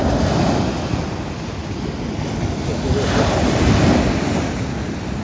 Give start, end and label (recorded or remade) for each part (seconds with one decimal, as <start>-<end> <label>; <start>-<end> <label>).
0.0-5.2 recorded